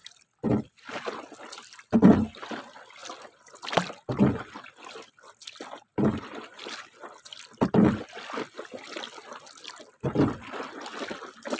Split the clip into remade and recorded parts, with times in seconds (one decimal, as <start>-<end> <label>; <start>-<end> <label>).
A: 0.0-3.0 recorded; 3.0-5.4 remade; 5.4-5.9 recorded; 5.9-8.0 remade; 8.0-11.6 recorded